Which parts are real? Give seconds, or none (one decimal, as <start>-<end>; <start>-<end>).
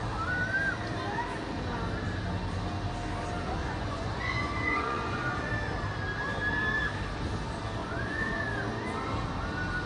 0.0-3.6; 5.5-7.8; 8.4-9.9